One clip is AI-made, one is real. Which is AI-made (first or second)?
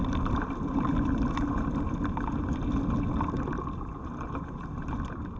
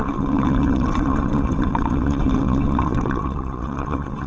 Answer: second